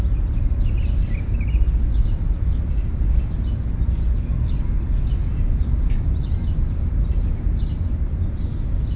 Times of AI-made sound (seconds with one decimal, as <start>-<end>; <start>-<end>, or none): none